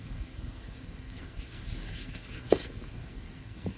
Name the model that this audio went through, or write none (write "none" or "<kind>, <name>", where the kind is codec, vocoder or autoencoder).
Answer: codec, SNAC